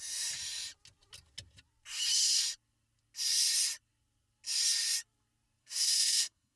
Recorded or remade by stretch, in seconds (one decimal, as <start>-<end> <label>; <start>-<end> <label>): 0.0-5.6 recorded; 5.6-6.6 remade

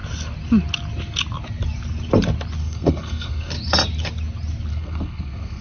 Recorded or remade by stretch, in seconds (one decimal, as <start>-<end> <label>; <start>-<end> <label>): 0.0-2.6 recorded; 2.6-3.5 remade; 3.5-4.7 recorded; 4.7-5.6 remade

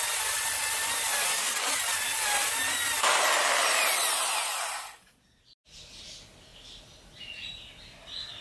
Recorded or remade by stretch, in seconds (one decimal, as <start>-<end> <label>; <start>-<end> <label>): 0.0-8.4 recorded

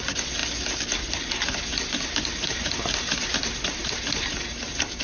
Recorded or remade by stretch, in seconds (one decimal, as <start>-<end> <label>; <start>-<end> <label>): 0.0-0.4 remade; 0.4-1.3 recorded; 1.3-5.0 remade

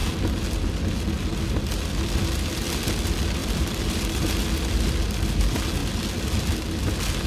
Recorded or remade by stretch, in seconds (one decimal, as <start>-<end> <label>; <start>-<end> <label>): 0.0-7.3 recorded

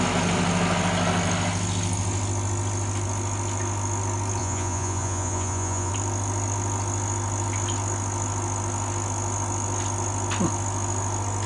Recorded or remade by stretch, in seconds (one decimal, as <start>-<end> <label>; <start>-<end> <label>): 0.0-4.4 recorded; 4.4-5.9 remade; 5.9-11.5 recorded

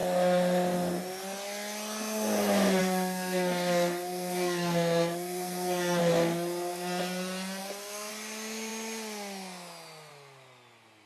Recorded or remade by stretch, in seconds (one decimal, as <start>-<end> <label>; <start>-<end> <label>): 0.0-2.8 recorded; 2.8-6.0 remade; 6.0-7.6 recorded; 7.6-8.1 remade; 8.1-11.1 recorded